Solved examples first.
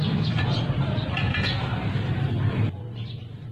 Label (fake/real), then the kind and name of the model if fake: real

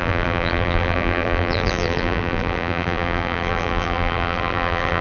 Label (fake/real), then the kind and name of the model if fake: fake, vocoder, BigVGAN v2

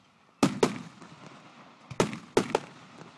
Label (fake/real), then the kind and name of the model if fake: real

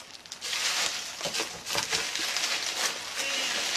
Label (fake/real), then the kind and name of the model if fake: real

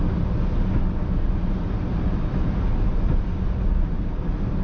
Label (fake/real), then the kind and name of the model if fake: real